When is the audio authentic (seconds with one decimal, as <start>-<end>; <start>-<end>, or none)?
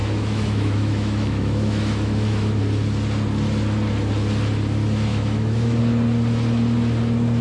2.6-5.1; 5.8-7.4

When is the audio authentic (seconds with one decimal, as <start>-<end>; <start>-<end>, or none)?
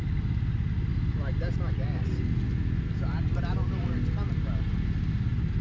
0.0-5.6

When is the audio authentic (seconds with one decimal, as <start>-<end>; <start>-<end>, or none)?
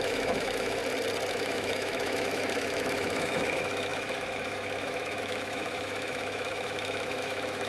0.8-1.3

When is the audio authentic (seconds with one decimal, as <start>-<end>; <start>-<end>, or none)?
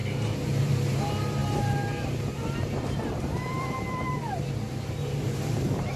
none